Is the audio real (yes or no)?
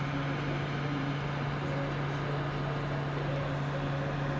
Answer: yes